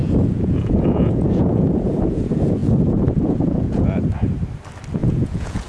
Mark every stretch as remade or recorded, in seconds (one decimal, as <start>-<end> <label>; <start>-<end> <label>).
0.0-2.2 remade; 2.2-2.6 recorded; 2.6-4.0 remade; 4.0-5.0 recorded; 5.0-5.7 remade